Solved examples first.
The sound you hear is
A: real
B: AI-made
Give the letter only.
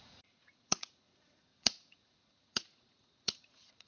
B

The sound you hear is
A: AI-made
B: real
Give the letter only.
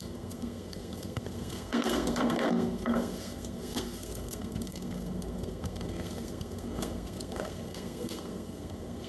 A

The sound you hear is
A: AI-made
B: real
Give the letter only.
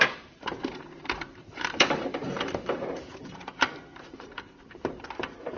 A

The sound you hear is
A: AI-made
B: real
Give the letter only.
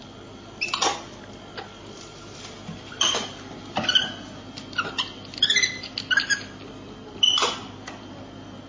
B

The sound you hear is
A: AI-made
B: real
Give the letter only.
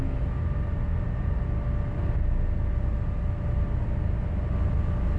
B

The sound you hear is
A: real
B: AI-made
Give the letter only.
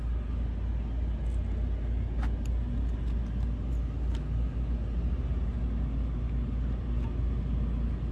A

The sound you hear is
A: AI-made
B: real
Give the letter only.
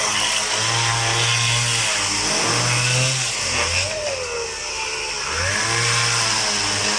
B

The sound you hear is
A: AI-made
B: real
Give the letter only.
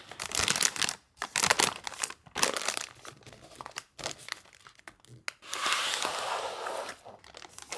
B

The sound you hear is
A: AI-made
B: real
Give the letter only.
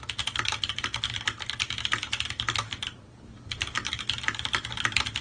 B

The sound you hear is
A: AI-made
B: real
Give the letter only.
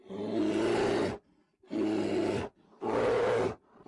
B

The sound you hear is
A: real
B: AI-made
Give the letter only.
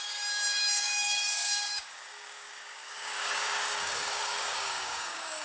B